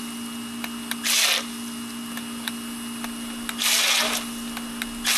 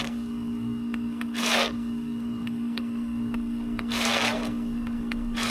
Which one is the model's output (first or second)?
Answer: second